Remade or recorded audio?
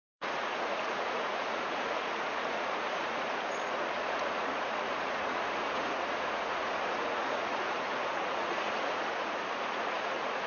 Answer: remade